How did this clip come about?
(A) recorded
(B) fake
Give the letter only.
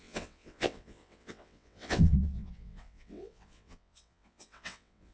B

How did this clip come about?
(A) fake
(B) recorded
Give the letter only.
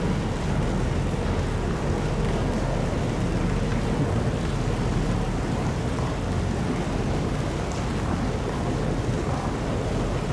B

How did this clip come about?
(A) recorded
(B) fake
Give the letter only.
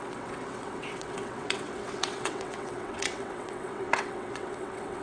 B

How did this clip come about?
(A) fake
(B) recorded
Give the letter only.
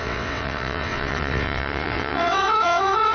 A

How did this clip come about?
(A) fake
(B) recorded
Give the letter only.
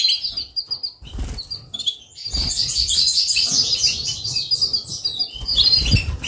B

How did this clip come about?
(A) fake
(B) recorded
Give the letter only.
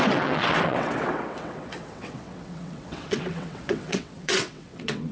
A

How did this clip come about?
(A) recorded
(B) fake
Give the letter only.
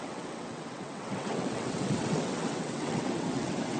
B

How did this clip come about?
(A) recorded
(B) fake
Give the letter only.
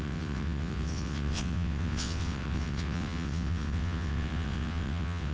B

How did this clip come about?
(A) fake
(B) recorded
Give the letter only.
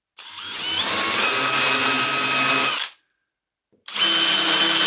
B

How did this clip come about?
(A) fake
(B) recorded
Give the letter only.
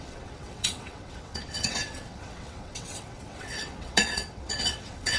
A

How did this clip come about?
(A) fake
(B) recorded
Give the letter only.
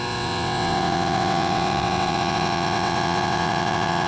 A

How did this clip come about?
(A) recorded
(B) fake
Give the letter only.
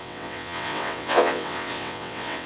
B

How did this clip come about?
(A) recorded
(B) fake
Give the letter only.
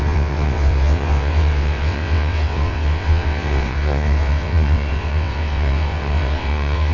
B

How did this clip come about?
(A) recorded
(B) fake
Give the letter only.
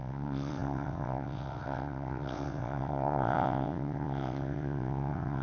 B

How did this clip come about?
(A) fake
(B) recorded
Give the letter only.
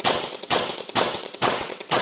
A